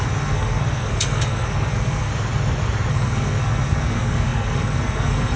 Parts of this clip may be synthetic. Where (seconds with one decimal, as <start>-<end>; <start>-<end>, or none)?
0.0-2.1; 2.9-5.4